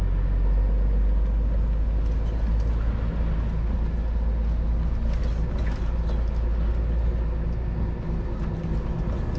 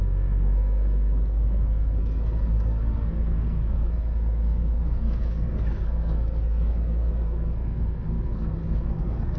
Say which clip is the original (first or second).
first